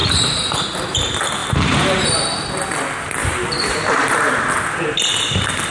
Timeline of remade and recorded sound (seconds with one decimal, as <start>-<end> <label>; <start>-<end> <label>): 0.0-0.7 remade; 0.7-1.4 recorded; 1.4-2.1 remade; 2.1-3.2 recorded; 3.2-4.4 remade; 4.4-5.7 recorded